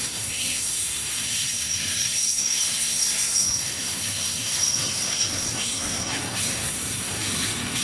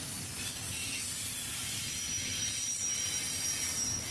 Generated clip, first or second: first